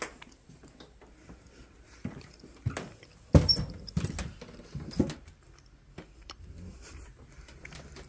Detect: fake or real real